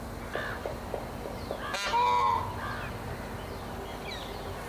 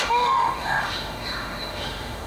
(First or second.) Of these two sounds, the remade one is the second